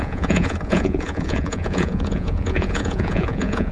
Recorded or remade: remade